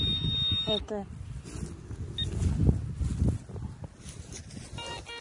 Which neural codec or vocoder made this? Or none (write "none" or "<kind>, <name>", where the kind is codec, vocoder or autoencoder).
none